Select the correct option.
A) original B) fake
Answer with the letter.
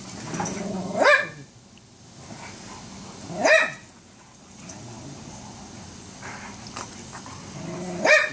A